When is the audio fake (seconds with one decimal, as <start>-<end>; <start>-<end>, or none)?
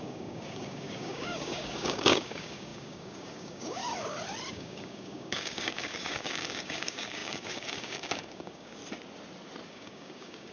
0.0-3.8; 4.5-8.8; 9.7-10.5